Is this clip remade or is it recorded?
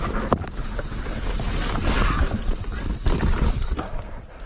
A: recorded